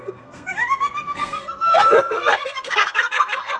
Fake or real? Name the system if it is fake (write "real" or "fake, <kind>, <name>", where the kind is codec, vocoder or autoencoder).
fake, codec, SNAC